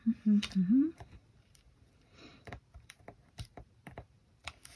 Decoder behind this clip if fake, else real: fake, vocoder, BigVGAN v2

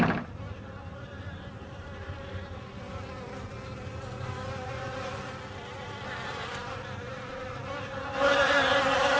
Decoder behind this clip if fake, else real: fake, vocoder, BigVGAN v2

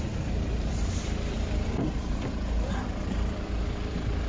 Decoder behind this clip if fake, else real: fake, vocoder, BigVGAN v2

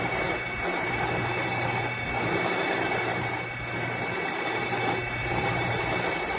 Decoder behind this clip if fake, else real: real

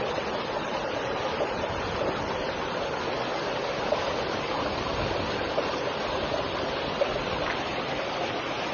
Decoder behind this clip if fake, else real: real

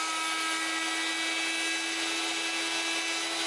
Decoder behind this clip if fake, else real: real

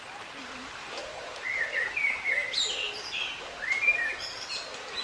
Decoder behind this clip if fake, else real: fake, vocoder, BigVGAN v2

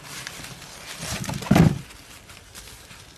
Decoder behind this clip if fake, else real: real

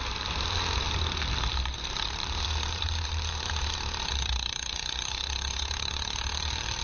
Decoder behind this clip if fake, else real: fake, vocoder, BigVGAN v2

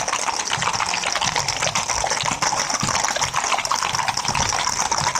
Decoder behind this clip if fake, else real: real